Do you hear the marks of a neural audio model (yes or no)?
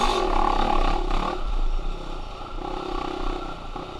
no